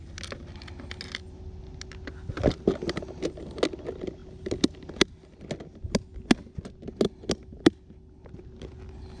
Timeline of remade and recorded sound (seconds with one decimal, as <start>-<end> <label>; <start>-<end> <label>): 0.0-9.2 recorded